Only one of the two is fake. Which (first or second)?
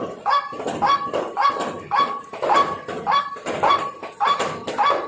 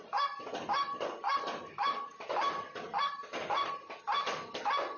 first